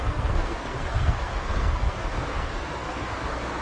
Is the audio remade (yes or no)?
yes